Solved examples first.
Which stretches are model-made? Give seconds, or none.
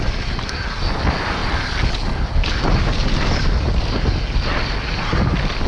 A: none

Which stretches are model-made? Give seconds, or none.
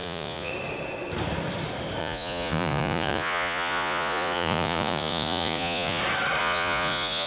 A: 0.0-0.5 (vocoder, Vocos); 2.0-6.0; 6.4-7.3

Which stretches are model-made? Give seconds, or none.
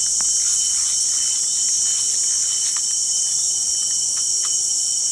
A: 3.1-5.1 (vocoder, Vocos)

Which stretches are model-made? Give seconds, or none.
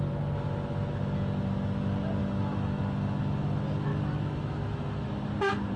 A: 2.2-2.8 (autoencoder, DAC-VAE); 3.9-5.1